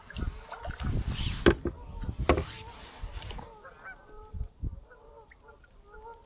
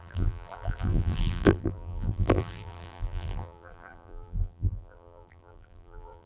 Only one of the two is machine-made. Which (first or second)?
second